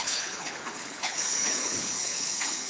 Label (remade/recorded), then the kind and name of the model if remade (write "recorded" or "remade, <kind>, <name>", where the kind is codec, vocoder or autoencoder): remade, codec, HILCodec